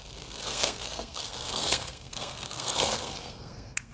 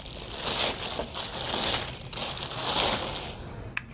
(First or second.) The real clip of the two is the second